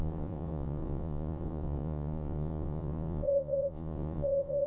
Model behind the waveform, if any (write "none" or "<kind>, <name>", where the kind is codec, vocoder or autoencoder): vocoder, Vocos